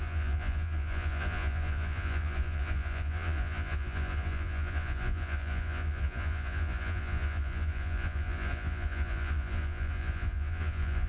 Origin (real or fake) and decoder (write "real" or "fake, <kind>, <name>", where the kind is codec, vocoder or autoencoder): fake, vocoder, Vocos